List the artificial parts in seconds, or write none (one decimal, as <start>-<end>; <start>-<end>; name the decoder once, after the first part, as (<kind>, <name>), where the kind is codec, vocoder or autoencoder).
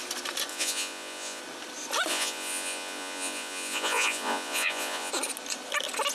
0.5-1.4 (vocoder, Vocos); 2.1-5.1